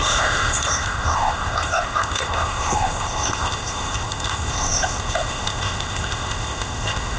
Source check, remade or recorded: remade